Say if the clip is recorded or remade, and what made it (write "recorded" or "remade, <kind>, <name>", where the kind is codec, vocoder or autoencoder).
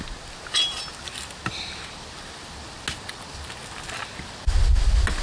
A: recorded